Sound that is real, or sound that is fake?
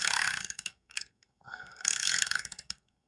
fake